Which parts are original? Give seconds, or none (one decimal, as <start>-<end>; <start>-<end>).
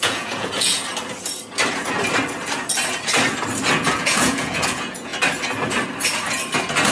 0.8-3.8; 5.1-6.9